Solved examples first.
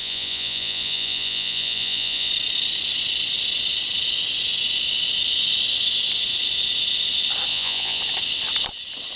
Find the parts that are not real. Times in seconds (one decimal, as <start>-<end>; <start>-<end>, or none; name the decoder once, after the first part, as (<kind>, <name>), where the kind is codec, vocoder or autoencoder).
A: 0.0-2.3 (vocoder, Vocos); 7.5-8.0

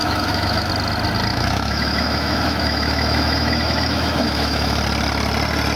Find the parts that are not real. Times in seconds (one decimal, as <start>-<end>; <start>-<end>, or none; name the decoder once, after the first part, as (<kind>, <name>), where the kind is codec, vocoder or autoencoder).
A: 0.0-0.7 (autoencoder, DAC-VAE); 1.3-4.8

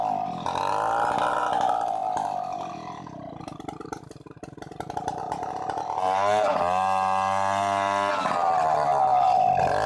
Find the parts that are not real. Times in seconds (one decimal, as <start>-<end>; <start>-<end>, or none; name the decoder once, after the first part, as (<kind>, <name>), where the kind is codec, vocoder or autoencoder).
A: none

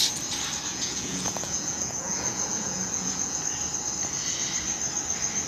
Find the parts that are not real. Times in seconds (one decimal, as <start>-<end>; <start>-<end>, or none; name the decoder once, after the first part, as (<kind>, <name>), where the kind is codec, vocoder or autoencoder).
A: 0.7-3.4 (vocoder, Vocos)

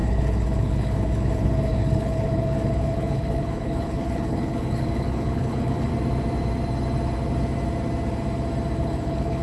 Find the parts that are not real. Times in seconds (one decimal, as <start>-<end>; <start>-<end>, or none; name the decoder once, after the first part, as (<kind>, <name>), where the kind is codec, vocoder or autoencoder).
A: 0.0-5.9 (codec, HILCodec); 8.8-9.4